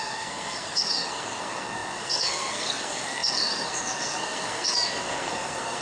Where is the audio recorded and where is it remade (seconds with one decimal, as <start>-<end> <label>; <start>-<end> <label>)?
0.0-5.8 remade